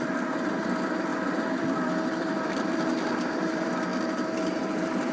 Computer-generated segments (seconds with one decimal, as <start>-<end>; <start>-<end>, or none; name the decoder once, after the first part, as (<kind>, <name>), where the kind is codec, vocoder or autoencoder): 0.0-3.9 (vocoder, BigVGAN v2); 4.6-5.1